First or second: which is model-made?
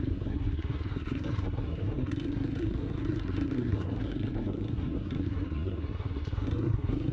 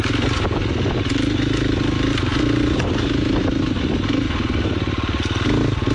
first